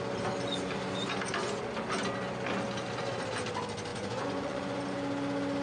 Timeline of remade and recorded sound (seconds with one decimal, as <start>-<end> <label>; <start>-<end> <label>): 0.0-3.9 recorded; 3.9-4.8 remade; 4.8-5.6 recorded